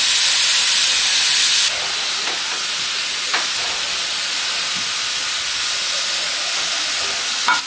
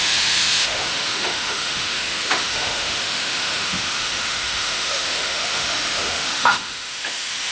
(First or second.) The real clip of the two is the first